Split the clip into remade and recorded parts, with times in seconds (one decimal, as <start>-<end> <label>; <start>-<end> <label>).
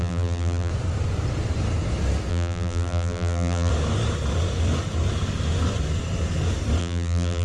0.0-0.7 remade; 0.7-2.3 recorded; 2.3-3.7 remade; 3.7-6.8 recorded; 6.8-7.4 remade